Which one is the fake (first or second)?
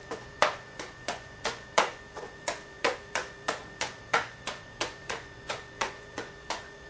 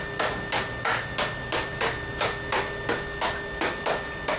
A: first